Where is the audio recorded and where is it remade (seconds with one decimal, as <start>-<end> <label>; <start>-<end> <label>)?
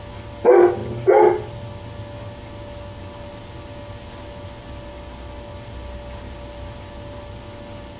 0.0-8.0 recorded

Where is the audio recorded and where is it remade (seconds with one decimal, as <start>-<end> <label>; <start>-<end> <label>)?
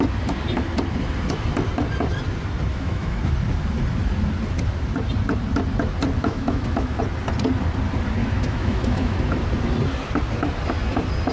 0.0-2.7 recorded; 2.7-3.2 remade; 3.2-6.2 recorded; 6.2-7.0 remade; 7.0-8.2 recorded; 8.2-9.2 remade; 9.2-11.3 recorded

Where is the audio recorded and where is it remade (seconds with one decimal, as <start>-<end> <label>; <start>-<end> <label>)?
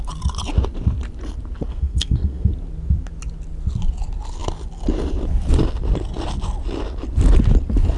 0.0-1.7 recorded; 1.7-2.5 remade; 2.5-8.0 recorded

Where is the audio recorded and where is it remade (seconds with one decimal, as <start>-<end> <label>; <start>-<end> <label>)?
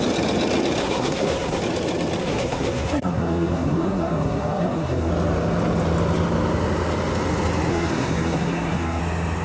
0.0-0.8 recorded; 0.8-1.6 remade; 1.6-2.2 recorded; 2.2-5.1 remade; 5.1-7.7 recorded; 7.7-9.0 remade; 9.0-9.4 recorded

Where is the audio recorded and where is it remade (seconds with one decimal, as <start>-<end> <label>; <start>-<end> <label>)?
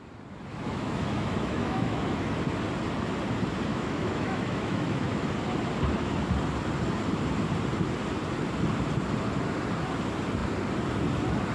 0.0-0.5 recorded; 0.5-2.3 remade; 2.3-3.7 recorded; 3.7-5.3 remade; 5.3-11.5 recorded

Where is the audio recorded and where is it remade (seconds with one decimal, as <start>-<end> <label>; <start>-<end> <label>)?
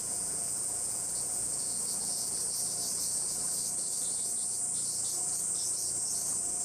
0.0-2.4 remade; 2.4-6.6 recorded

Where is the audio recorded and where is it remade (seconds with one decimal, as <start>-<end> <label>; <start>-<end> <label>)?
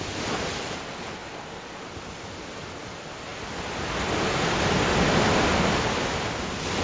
0.0-6.8 recorded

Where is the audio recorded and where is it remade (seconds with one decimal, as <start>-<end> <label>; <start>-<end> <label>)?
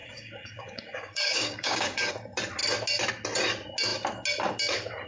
0.0-2.1 remade; 2.1-5.1 recorded